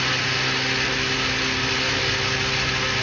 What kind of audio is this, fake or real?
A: real